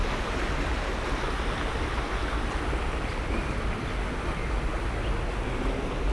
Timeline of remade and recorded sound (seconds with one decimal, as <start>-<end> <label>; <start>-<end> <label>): 0.0-6.1 recorded